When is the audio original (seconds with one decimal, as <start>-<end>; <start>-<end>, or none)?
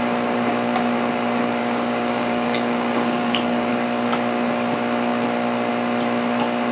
0.0-1.6; 3.7-6.7